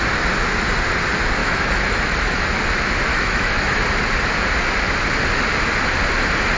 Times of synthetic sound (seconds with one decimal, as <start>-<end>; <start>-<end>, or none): 1.4-2.6; 3.1-3.8